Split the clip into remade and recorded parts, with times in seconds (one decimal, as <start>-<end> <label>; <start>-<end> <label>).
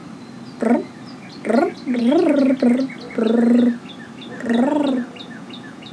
0.0-5.2 recorded; 5.2-5.9 remade